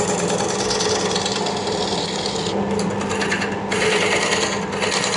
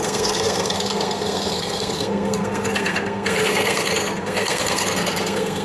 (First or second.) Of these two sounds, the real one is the first